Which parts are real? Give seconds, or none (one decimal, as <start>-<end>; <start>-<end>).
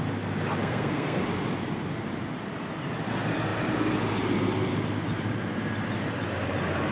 0.0-0.6; 1.2-6.9